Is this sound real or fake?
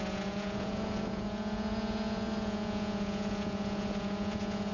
fake